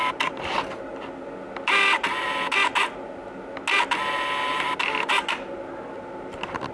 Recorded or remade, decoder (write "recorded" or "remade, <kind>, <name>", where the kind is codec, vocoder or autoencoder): recorded